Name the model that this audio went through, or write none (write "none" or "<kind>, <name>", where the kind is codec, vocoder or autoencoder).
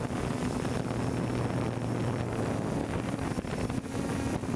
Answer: none